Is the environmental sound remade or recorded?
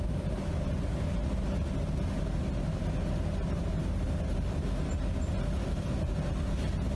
recorded